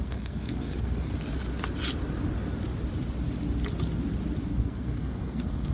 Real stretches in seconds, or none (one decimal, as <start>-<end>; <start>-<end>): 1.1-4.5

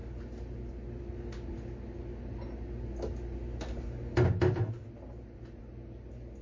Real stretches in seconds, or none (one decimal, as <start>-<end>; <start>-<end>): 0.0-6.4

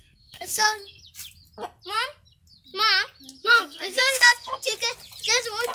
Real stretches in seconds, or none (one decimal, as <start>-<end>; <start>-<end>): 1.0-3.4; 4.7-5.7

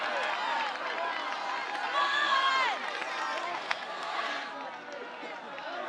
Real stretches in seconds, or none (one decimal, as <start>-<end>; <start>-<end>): 0.0-2.0; 2.5-3.5; 4.3-5.9